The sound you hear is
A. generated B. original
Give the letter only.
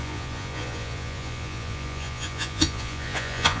A